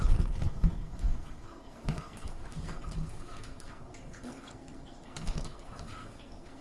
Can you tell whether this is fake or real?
fake